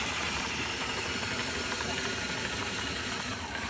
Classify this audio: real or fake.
fake